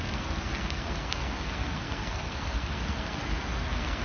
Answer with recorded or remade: remade